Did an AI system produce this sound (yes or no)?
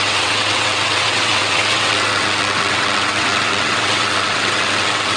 yes